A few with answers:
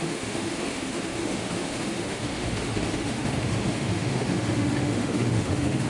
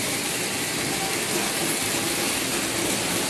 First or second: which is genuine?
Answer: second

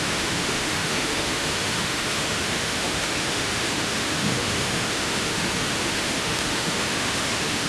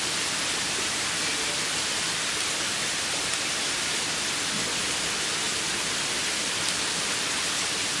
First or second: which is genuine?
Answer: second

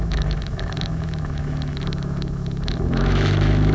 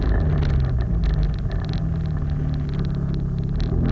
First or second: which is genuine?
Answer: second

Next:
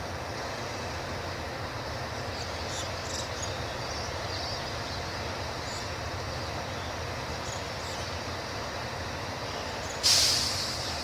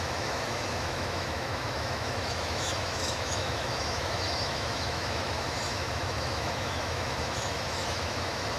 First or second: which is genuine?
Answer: first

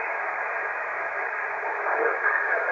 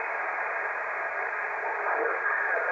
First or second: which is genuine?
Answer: second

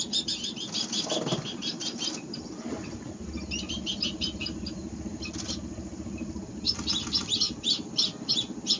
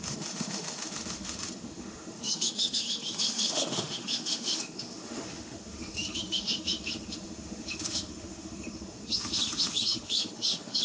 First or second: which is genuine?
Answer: first